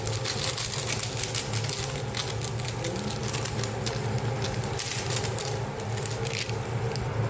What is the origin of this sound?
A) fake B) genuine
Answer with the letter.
B